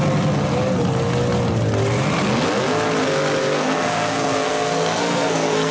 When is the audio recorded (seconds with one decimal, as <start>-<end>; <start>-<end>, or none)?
0.0-3.4